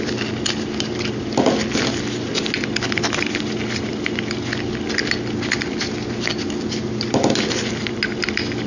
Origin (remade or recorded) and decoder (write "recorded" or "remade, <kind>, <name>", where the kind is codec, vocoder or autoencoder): recorded